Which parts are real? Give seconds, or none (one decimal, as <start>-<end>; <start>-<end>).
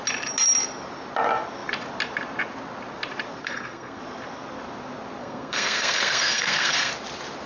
0.0-3.4; 4.0-5.2; 6.9-7.5